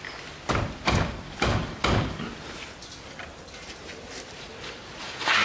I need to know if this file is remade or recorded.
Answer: recorded